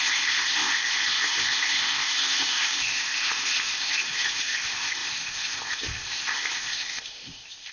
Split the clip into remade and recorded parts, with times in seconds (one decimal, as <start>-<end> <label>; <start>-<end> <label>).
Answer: 0.0-7.7 remade